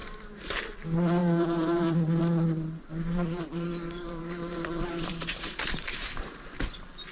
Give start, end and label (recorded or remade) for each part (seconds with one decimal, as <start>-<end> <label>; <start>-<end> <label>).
0.0-0.6 remade; 0.6-1.2 recorded; 1.2-2.2 remade; 2.2-2.9 recorded; 2.9-6.6 remade; 6.6-7.1 recorded